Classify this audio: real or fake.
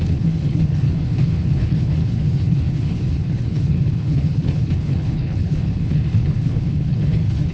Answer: fake